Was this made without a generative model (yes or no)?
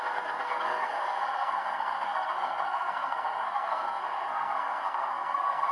no